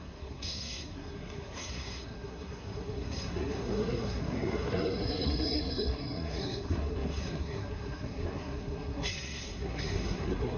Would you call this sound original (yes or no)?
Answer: no